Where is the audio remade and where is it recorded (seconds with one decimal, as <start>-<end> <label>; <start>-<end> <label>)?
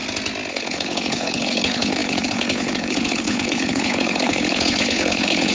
0.0-0.5 recorded; 0.5-5.5 remade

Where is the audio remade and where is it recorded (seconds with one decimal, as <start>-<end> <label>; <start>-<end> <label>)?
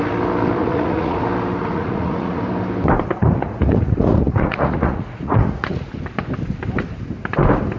0.0-0.6 recorded; 0.6-1.2 remade; 1.2-1.6 recorded; 1.6-2.4 remade; 2.4-3.2 recorded; 3.2-5.9 remade; 5.9-7.8 recorded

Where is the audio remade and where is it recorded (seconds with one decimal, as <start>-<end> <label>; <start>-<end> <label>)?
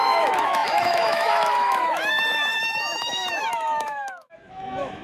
0.0-5.0 remade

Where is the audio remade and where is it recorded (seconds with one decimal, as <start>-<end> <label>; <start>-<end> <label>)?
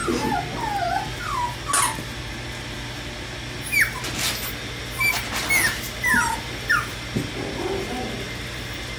0.0-9.0 recorded